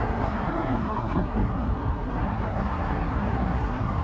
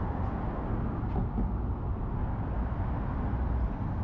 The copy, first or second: first